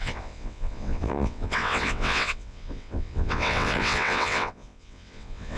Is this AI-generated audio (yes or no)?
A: yes